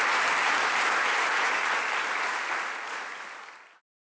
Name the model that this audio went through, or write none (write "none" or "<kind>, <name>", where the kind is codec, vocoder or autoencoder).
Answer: none